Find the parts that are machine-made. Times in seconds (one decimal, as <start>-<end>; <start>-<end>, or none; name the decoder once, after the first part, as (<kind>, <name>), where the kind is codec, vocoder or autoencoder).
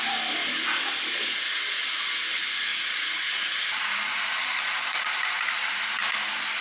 2.7-5.9 (vocoder, Vocos)